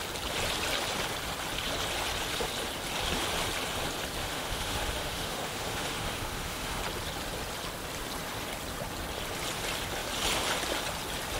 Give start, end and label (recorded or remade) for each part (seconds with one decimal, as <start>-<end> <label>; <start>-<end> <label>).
0.0-4.2 recorded; 4.2-6.8 remade; 6.8-11.4 recorded